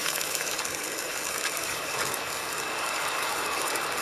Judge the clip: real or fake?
fake